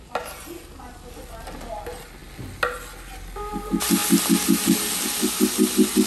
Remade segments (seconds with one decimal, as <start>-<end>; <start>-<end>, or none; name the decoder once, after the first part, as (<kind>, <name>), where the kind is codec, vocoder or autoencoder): none